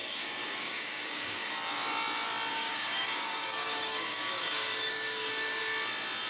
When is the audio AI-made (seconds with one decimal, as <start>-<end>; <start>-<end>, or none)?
0.0-1.5; 2.5-5.6